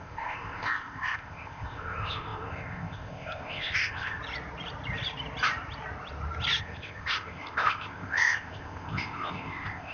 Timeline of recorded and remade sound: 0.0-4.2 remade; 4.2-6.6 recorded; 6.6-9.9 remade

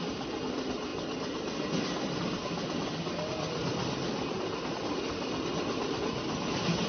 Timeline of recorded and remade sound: 0.0-6.9 recorded

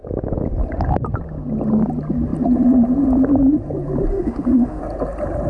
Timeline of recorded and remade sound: 0.0-4.1 recorded; 4.1-4.8 remade; 4.8-5.5 recorded

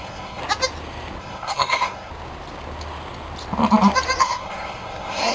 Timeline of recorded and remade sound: 0.0-0.4 remade; 0.4-1.2 recorded; 1.2-2.1 remade; 2.1-4.2 recorded; 4.2-5.3 remade

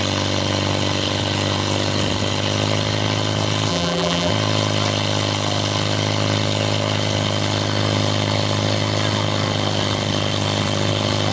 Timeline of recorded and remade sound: 0.0-3.7 recorded; 3.7-4.3 remade; 4.3-11.3 recorded